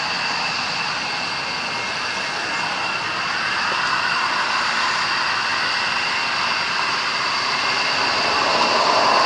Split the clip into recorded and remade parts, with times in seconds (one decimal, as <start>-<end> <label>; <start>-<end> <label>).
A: 0.0-9.3 recorded